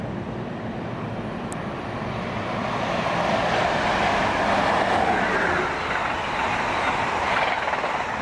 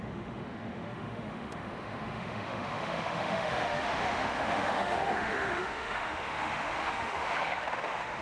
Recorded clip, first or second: first